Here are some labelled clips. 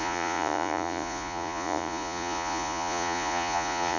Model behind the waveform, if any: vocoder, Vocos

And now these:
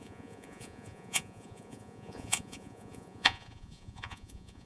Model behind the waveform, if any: vocoder, Vocos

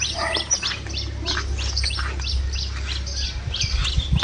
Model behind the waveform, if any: none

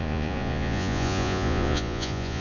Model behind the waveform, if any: vocoder, Vocos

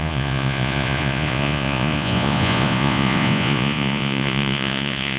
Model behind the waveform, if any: vocoder, Vocos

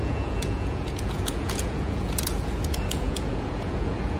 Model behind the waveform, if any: vocoder, Vocos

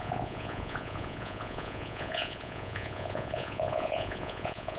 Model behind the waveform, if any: vocoder, Vocos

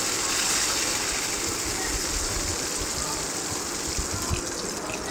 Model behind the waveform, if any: none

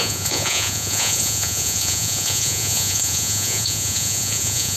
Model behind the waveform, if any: vocoder, Vocos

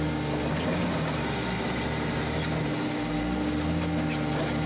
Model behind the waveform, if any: none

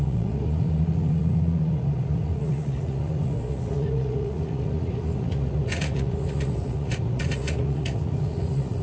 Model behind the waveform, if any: vocoder, Vocos